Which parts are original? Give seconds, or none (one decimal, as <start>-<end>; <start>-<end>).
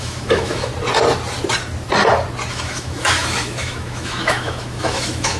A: 0.7-2.5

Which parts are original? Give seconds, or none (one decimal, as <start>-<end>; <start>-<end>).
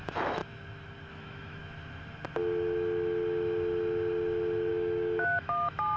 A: 0.4-1.1; 1.6-4.7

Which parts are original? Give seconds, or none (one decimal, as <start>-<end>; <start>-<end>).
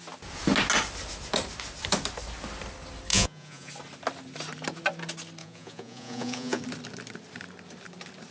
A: 0.0-3.1; 3.7-5.4; 6.6-8.3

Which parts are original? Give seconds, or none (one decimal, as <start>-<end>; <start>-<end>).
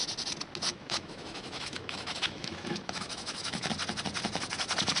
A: 0.0-0.7; 3.7-5.0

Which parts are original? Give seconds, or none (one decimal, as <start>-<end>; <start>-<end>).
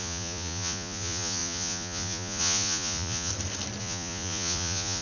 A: 3.3-3.8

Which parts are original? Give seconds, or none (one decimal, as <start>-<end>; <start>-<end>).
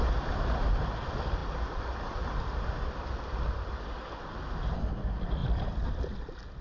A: 0.0-3.3; 4.0-5.4; 6.0-6.6